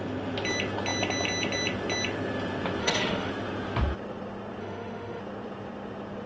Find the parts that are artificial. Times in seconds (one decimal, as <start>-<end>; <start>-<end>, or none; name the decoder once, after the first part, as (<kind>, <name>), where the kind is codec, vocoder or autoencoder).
2.8-3.3 (autoencoder, DAC-VAE); 4.6-5.2